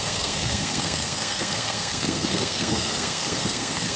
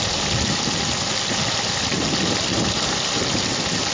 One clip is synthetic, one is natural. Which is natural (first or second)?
second